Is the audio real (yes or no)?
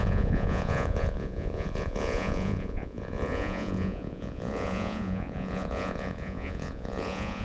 no